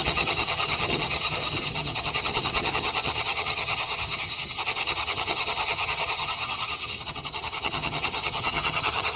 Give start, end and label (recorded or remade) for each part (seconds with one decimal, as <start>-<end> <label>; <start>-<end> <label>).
0.0-9.2 remade